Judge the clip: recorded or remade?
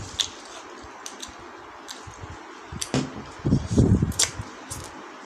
recorded